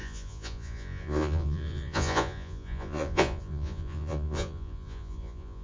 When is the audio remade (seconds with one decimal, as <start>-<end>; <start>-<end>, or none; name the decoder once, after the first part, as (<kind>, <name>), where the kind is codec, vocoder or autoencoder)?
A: 0.0-5.6 (vocoder, Vocos)